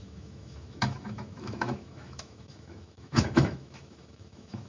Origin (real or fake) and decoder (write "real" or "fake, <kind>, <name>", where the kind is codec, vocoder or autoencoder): fake, autoencoder, DAC-VAE